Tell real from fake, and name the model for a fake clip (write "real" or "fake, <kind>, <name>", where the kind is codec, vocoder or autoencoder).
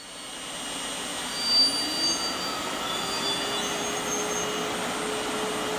real